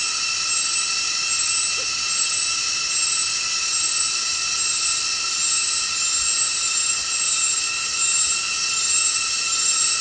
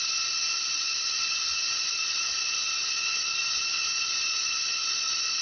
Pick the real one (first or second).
first